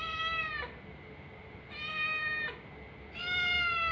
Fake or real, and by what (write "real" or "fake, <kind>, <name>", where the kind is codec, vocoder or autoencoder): real